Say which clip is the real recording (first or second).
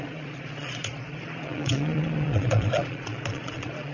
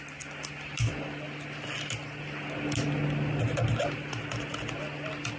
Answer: second